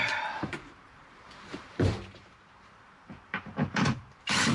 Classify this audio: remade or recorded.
remade